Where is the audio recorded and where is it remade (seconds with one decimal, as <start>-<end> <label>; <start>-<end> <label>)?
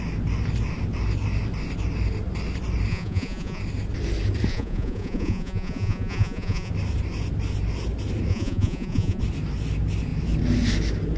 0.0-2.9 recorded; 2.9-3.6 remade; 3.6-4.5 recorded; 4.5-6.7 remade; 6.7-8.3 recorded; 8.3-9.2 remade; 9.2-11.2 recorded